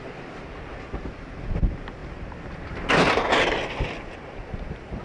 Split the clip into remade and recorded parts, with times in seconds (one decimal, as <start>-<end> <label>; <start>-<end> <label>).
0.0-5.0 recorded